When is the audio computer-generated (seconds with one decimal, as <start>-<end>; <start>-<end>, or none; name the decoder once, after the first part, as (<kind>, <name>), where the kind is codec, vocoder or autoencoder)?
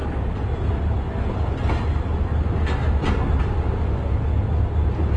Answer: none